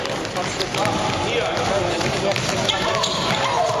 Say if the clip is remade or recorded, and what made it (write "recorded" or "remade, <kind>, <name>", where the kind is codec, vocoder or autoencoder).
recorded